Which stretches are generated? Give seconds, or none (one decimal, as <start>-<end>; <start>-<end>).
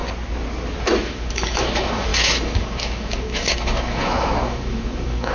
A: 1.0-5.3